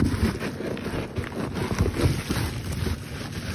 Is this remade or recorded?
recorded